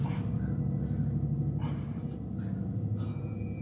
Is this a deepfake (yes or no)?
no